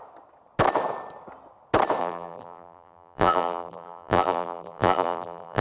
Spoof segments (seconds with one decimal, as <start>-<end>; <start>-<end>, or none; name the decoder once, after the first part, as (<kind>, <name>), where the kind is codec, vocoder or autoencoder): 2.0-5.6 (vocoder, BigVGAN v2)